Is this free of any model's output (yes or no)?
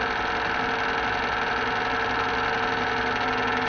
yes